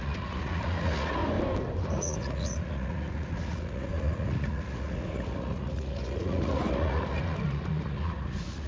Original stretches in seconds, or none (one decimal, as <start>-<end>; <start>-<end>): 1.2-1.8